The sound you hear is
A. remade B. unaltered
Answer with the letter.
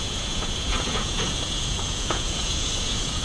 A